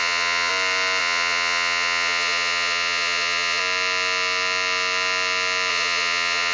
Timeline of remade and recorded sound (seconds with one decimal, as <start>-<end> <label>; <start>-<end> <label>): 0.0-0.5 remade; 0.5-1.0 recorded; 1.0-3.6 remade; 3.6-5.7 recorded; 5.7-6.5 remade